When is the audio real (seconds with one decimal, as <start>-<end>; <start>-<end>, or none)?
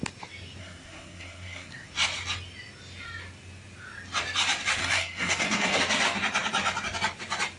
0.0-0.6; 1.9-4.8; 5.8-7.6